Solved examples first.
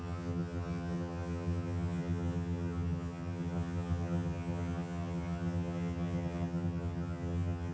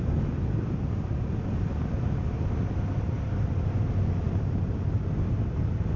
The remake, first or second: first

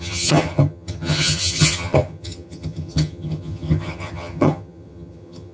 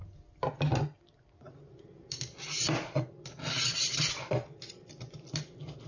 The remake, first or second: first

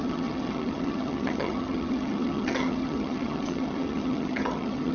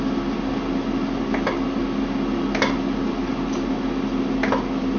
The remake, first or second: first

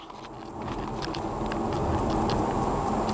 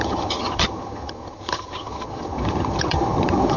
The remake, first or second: second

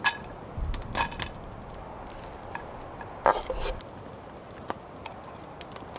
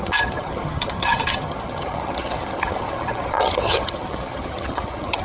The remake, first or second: second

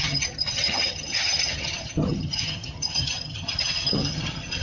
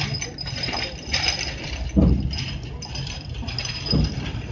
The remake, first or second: first